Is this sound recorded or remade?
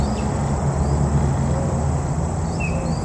recorded